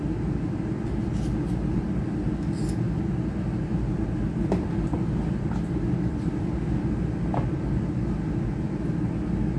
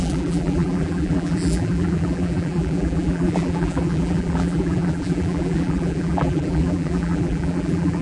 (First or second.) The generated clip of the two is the second